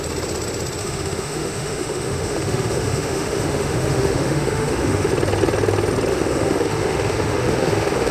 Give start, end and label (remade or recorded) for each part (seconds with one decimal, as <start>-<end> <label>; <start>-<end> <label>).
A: 0.0-0.8 recorded; 0.8-5.1 remade; 5.1-6.1 recorded; 6.1-8.1 remade